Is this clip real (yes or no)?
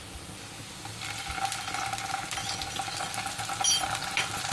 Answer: yes